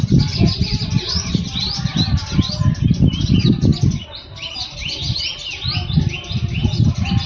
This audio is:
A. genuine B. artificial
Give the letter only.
A